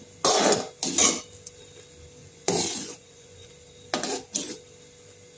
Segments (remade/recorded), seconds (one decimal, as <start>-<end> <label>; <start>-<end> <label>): 0.0-2.2 recorded; 2.2-3.5 remade; 3.5-5.4 recorded